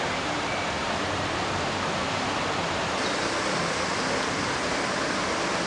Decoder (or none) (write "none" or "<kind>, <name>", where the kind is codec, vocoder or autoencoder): vocoder, BigVGAN v2